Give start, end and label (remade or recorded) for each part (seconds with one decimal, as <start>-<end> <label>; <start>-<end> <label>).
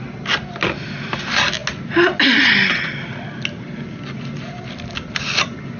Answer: 0.0-5.8 recorded